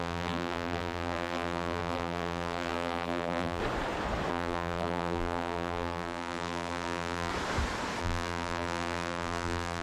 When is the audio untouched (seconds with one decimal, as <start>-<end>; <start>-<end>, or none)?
3.6-4.3; 7.3-8.0